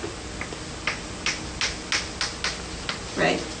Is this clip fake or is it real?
real